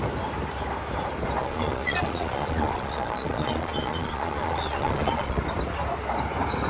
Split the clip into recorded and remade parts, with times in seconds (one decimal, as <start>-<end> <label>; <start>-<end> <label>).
0.0-1.4 recorded; 1.4-5.4 remade; 5.4-6.7 recorded